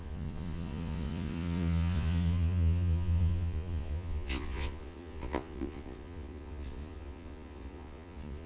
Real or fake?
fake